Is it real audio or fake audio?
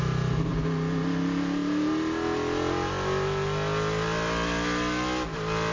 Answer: real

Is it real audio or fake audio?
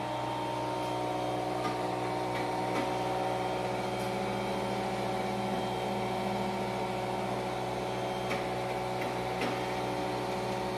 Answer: real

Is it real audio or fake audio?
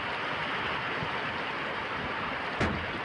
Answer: real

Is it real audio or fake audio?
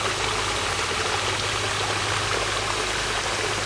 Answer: real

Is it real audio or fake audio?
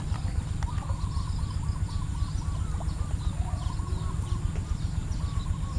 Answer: real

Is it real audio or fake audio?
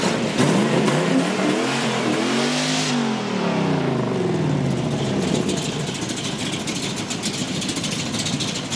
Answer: real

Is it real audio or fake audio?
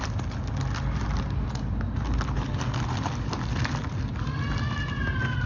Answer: real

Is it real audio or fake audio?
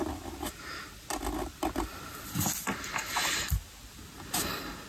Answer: real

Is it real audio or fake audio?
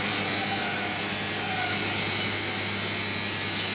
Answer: real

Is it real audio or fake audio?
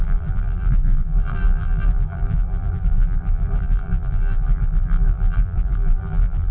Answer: fake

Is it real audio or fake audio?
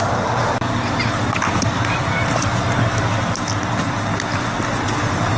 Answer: real